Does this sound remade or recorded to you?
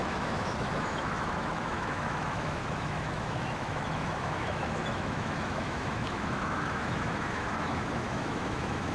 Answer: remade